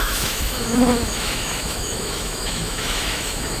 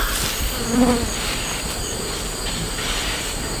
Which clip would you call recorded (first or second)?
second